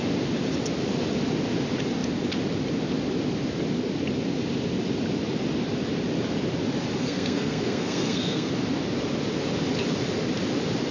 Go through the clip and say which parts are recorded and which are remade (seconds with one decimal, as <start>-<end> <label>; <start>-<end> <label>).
0.0-7.0 recorded; 7.0-8.5 remade; 8.5-10.9 recorded